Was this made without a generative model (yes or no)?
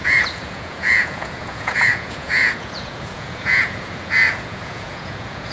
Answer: no